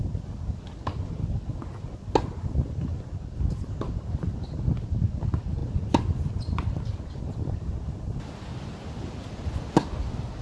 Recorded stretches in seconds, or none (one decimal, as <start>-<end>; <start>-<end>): 0.0-10.4